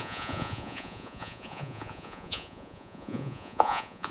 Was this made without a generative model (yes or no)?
no